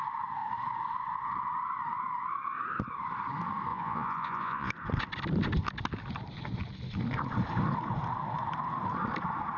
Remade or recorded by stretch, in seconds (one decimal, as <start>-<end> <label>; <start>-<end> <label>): 0.0-3.7 recorded; 3.7-4.7 remade; 4.7-9.6 recorded